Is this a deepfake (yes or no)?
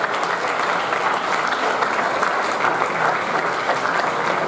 no